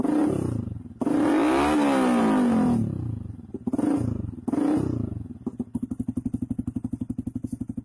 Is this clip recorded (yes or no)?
yes